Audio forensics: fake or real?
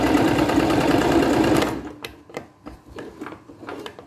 real